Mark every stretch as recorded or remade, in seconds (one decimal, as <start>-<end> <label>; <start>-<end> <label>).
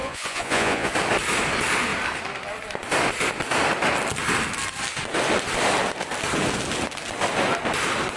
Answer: 0.0-0.9 remade; 0.9-8.2 recorded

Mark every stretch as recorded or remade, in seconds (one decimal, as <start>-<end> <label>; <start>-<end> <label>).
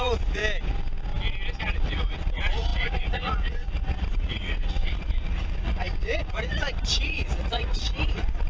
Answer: 0.0-0.4 remade; 0.4-1.6 recorded; 1.6-8.5 remade